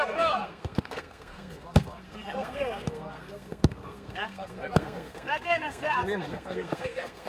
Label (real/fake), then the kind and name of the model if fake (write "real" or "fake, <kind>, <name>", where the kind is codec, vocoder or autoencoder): fake, codec, SNAC